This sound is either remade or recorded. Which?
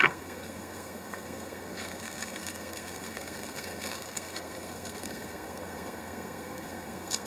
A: remade